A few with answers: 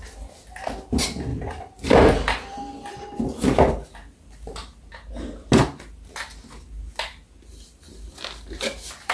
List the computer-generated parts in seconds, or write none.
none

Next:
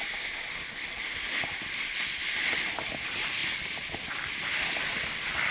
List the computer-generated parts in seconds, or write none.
none

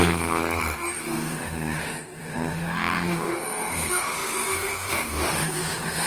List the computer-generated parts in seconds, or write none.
0.0-0.4 (autoencoder, DAC-VAE); 1.0-6.1

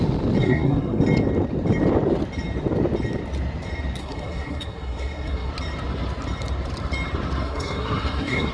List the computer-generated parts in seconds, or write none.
0.4-1.0 (codec, SNAC); 4.0-5.5; 7.4-8.5

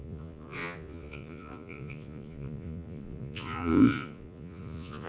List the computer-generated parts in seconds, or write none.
0.0-5.1 (vocoder, Vocos)

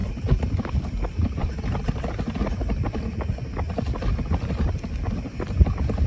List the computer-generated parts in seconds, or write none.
0.0-1.6 (vocoder, BigVGAN v2)